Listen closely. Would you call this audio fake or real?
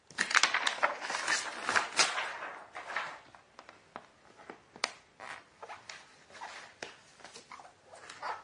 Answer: real